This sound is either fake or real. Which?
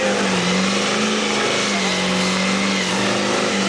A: real